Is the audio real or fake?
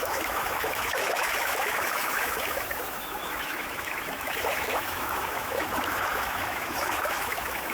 fake